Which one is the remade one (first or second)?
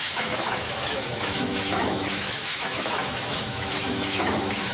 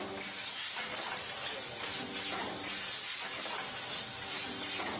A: first